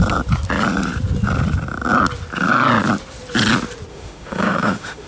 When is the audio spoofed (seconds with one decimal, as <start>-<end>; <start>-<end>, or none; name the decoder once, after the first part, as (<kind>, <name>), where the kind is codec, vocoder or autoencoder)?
3.9-5.1 (autoencoder, DAC-VAE)